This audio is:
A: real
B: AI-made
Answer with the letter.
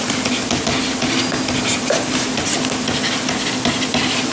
A